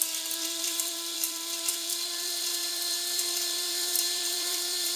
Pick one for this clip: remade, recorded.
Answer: remade